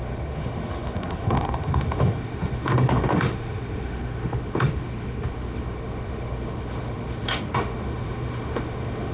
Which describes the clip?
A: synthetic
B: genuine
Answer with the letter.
A